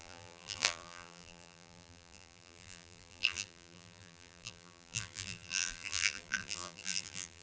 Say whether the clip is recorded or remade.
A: remade